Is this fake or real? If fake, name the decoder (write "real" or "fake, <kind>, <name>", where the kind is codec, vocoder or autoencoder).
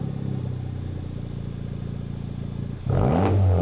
real